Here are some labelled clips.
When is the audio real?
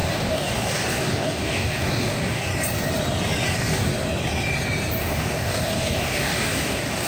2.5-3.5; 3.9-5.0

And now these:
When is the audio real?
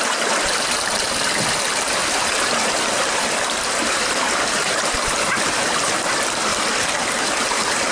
6.5-7.2